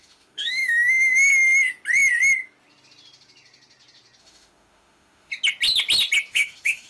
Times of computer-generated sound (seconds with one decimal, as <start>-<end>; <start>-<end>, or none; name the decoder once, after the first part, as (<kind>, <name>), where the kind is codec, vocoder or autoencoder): 0.0-1.3 (autoencoder, DAC-VAE); 4.2-5.3; 6.3-6.9